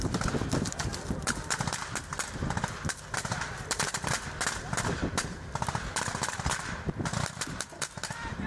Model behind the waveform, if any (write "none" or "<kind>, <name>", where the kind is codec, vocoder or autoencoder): vocoder, BigVGAN v2